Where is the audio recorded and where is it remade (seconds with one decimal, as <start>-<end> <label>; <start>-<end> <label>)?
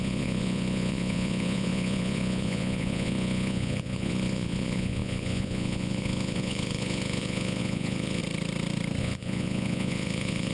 0.0-8.2 remade; 8.2-9.0 recorded; 9.0-10.5 remade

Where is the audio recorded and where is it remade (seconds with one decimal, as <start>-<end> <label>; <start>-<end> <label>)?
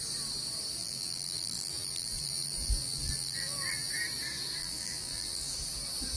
0.0-0.8 recorded; 0.8-3.9 remade; 3.9-4.6 recorded; 4.6-5.5 remade; 5.5-6.2 recorded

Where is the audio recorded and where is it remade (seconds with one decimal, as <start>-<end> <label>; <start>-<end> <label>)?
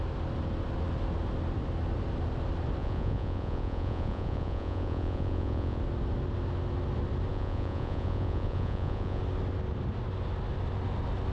0.0-2.8 recorded; 2.8-5.8 remade; 5.8-7.3 recorded; 7.3-9.2 remade; 9.2-11.3 recorded